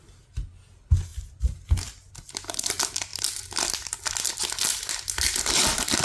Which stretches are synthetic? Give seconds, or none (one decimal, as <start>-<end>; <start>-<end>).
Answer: none